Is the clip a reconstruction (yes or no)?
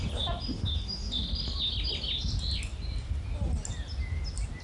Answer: no